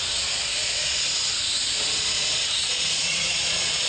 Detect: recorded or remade remade